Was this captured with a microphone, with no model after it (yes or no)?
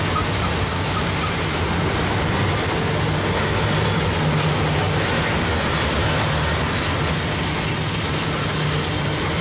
yes